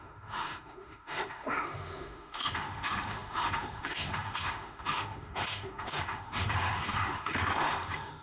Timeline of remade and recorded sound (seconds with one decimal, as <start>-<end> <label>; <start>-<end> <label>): 0.0-8.2 remade